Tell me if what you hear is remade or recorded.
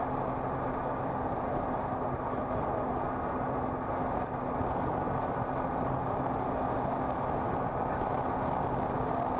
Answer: recorded